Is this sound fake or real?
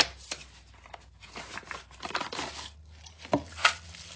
real